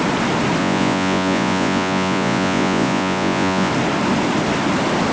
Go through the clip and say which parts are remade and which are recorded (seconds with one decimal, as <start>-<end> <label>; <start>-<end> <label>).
0.0-0.6 recorded; 0.6-3.7 remade; 3.7-5.1 recorded